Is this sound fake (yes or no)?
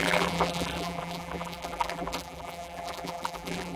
yes